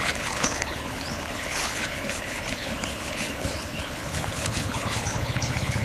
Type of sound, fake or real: fake